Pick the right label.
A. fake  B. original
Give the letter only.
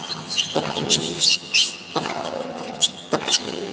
A